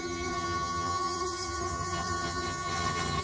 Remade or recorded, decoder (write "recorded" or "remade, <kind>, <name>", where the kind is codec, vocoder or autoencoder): remade, vocoder, HiFi-GAN